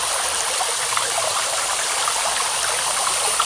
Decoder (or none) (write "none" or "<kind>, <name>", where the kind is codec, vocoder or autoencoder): vocoder, BigVGAN v2